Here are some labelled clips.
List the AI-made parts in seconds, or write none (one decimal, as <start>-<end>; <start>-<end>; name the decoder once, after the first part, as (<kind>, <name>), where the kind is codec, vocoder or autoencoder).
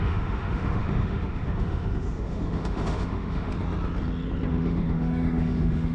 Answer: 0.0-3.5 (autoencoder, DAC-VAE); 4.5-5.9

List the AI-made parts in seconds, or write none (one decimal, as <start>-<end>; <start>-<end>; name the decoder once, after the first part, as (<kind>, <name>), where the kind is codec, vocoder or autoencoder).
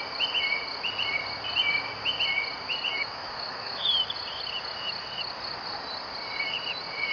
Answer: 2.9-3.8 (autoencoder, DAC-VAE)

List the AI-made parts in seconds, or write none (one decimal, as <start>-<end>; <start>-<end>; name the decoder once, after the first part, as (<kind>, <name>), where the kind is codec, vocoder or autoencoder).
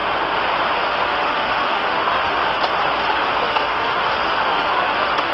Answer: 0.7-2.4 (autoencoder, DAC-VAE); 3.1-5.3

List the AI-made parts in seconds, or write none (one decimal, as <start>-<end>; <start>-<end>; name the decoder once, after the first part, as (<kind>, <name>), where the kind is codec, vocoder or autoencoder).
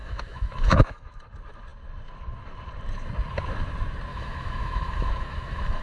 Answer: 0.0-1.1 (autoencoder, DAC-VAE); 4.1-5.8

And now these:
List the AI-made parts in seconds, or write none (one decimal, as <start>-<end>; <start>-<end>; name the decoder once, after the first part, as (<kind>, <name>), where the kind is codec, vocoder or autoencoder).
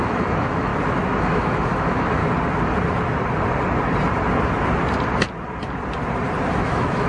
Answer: 0.0-0.7 (autoencoder, DAC-VAE); 1.2-2.2; 6.5-7.1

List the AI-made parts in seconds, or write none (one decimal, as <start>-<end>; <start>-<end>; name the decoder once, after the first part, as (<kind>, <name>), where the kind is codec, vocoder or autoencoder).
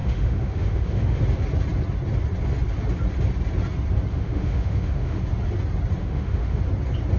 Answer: 0.0-1.2 (autoencoder, DAC-VAE); 4.1-5.2; 6.0-6.6